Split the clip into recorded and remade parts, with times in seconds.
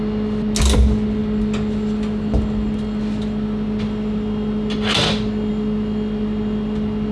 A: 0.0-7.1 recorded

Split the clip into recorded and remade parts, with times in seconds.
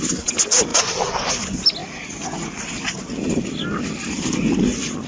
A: 0.0-1.8 recorded; 1.8-2.6 remade; 2.6-5.1 recorded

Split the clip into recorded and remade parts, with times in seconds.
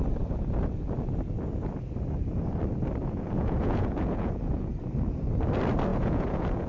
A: 0.0-3.0 recorded; 3.0-4.7 remade; 4.7-5.9 recorded; 5.9-6.7 remade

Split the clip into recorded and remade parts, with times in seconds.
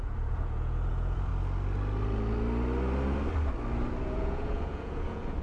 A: 0.0-1.3 remade; 1.3-4.0 recorded; 4.0-5.4 remade